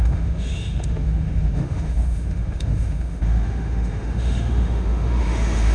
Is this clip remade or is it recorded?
remade